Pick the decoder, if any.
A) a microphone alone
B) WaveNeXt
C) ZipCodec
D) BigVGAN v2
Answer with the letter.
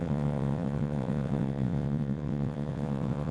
B